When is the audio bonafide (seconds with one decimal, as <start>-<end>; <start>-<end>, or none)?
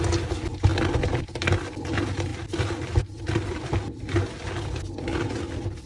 0.0-5.9